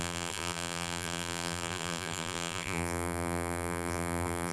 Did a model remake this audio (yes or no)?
yes